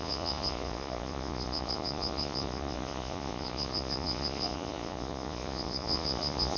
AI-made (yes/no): yes